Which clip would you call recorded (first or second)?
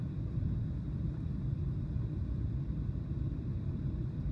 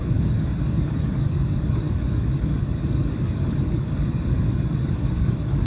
first